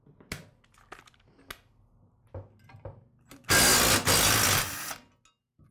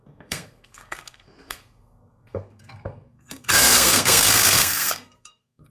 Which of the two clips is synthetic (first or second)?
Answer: second